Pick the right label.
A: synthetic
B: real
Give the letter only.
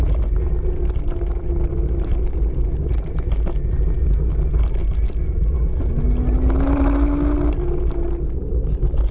B